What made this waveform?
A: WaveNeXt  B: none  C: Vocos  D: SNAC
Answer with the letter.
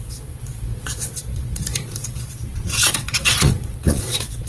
C